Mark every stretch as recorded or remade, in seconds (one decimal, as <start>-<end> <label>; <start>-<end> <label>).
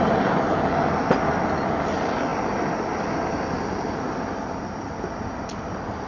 0.0-6.1 recorded